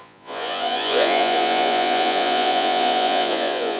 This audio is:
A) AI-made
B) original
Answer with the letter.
A